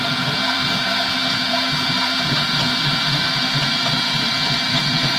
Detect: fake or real fake